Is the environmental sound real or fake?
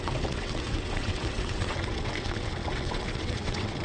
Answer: fake